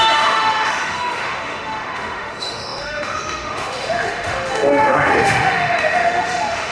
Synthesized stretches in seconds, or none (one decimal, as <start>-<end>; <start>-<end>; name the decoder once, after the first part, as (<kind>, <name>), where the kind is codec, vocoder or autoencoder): 0.0-6.7 (autoencoder, DAC-VAE)